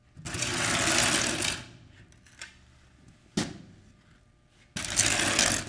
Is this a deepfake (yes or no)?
no